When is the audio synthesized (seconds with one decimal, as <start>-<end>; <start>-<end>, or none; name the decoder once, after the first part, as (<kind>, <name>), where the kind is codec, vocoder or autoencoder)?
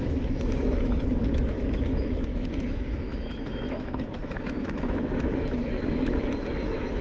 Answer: 0.0-7.0 (autoencoder, DAC-VAE)